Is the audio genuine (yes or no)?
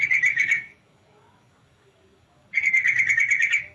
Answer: no